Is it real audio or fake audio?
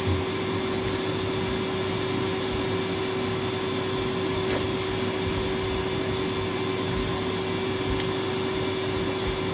real